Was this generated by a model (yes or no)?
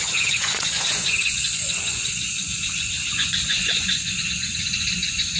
yes